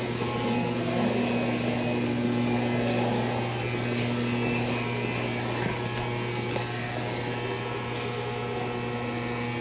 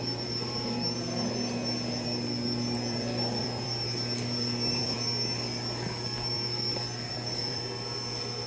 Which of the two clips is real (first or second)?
first